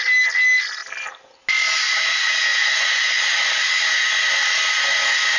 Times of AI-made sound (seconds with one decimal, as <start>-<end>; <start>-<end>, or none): 2.5-3.2